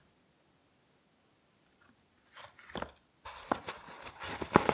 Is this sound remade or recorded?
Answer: recorded